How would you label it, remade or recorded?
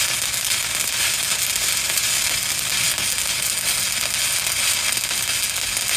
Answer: recorded